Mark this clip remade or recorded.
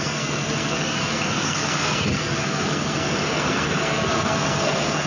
remade